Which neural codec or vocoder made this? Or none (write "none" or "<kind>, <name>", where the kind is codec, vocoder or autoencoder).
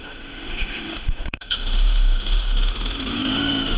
autoencoder, DAC-VAE